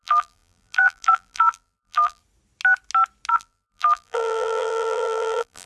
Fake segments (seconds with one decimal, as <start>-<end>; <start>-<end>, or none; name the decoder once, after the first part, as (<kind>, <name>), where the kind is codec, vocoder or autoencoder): 0.0-2.2 (vocoder, BigVGAN v2); 3.3-5.7